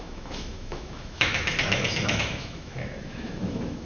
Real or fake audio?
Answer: fake